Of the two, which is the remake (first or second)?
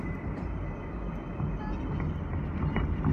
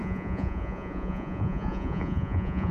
second